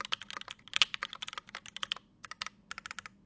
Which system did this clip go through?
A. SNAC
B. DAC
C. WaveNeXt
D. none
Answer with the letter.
D